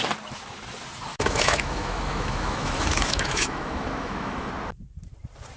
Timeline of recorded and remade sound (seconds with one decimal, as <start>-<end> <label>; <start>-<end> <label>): 0.0-1.1 recorded; 1.1-4.5 remade; 4.5-5.6 recorded